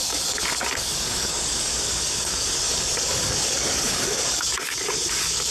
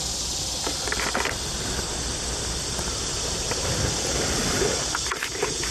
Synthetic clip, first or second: first